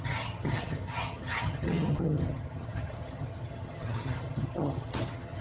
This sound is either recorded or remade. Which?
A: remade